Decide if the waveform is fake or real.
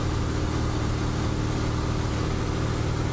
real